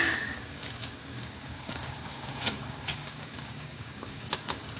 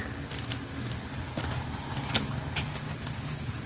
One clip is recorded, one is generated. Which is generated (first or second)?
first